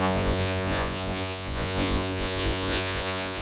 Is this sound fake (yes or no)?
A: yes